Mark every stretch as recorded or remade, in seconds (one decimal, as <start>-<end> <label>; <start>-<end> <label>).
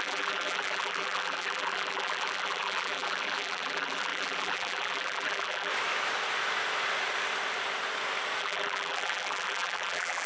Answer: 0.0-5.7 remade; 5.7-8.4 recorded; 8.4-10.3 remade